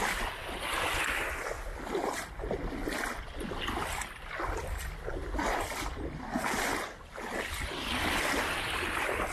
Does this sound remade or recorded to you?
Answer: recorded